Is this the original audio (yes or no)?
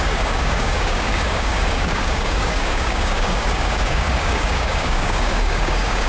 no